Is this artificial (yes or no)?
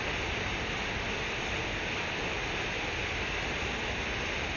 no